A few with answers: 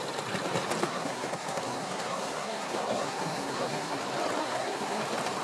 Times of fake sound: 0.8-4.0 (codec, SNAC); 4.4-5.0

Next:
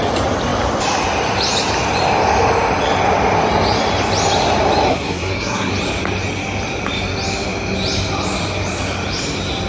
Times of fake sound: 4.9-5.7 (codec, SNAC)

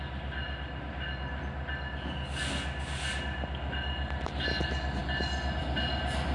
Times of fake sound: none

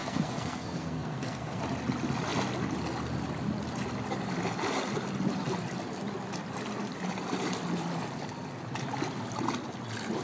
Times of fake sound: 0.0-1.6 (codec, SNAC)

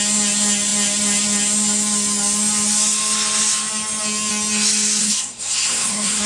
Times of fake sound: 5.0-6.3 (codec, SNAC)

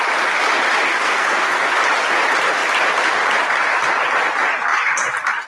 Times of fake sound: 0.9-1.7 (codec, SNAC)

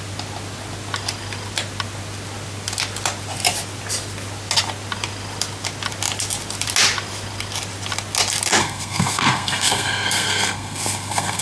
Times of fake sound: 8.6-11.4 (codec, SNAC)